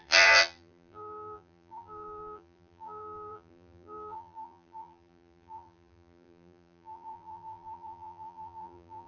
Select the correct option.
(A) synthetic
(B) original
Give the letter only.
A